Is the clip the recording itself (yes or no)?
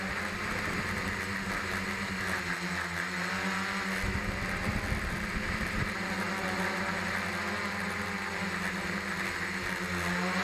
yes